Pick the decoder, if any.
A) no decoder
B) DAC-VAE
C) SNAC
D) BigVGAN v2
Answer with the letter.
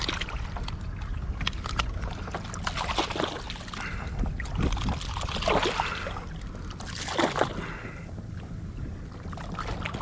A